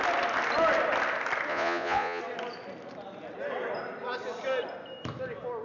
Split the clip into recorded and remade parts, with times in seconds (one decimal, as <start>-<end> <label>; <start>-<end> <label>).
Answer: 0.0-1.5 recorded; 1.5-2.2 remade; 2.2-5.6 recorded